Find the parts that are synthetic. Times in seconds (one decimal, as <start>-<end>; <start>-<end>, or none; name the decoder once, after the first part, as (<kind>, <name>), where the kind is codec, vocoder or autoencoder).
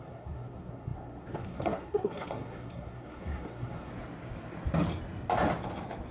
0.0-3.9 (codec, SNAC)